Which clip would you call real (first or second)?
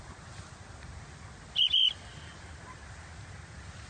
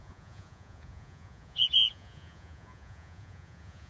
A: first